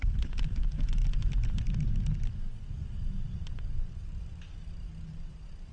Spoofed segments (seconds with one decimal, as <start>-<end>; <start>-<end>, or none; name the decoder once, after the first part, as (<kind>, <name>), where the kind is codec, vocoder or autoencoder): 0.0-1.0 (vocoder, BigVGAN v2); 3.8-4.3; 5.1-5.7